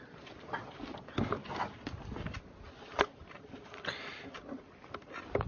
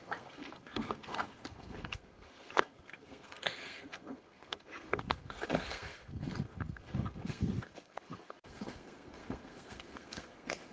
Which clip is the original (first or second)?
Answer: first